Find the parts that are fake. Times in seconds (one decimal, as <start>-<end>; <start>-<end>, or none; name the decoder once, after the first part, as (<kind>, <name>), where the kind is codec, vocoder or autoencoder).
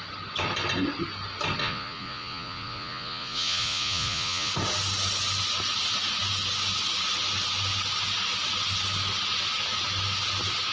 1.6-4.5 (vocoder, Vocos)